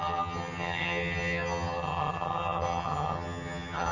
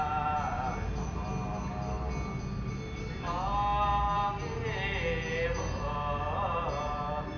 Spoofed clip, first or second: first